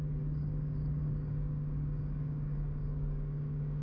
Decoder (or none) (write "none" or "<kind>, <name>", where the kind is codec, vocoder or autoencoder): codec, DAC